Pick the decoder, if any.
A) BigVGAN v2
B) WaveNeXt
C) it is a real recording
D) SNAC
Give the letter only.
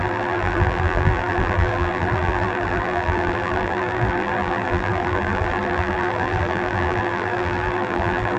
A